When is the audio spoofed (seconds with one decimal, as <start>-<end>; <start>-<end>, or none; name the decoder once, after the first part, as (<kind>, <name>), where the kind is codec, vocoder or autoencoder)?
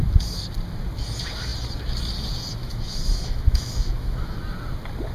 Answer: 2.6-4.4 (autoencoder, DAC-VAE)